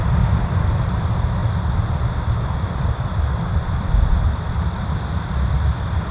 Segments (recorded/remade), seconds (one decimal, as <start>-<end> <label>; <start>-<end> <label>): 0.0-1.4 recorded; 1.4-5.1 remade; 5.1-6.1 recorded

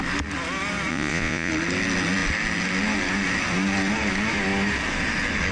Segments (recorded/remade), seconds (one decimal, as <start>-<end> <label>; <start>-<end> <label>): 0.0-0.9 recorded; 0.9-1.5 remade; 1.5-5.5 recorded

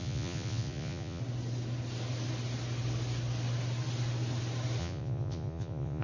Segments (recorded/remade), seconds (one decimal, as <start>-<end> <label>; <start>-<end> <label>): 0.0-1.2 remade; 1.2-4.8 recorded; 4.8-6.0 remade

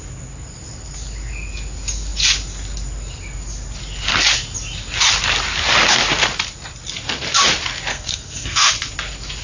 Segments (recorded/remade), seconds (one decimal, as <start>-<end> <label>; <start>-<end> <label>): 0.0-7.9 recorded; 7.9-8.7 remade; 8.7-9.4 recorded